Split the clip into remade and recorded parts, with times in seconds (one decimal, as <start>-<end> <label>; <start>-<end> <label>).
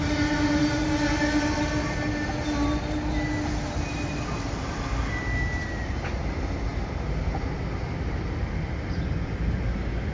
0.0-10.1 recorded